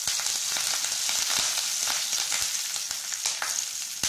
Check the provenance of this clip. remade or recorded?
recorded